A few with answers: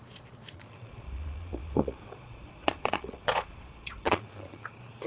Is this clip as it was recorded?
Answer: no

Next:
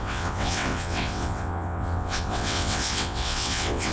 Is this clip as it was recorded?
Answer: no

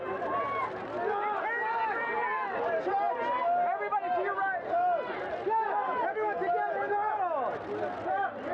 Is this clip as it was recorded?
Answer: yes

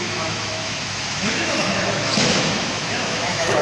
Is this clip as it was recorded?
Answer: no